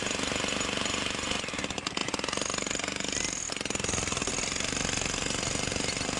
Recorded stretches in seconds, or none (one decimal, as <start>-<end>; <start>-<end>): 0.0-6.2